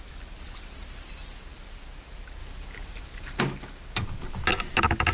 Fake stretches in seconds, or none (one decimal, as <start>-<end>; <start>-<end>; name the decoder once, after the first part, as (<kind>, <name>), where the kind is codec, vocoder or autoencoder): 2.4-3.4 (vocoder, BigVGAN v2)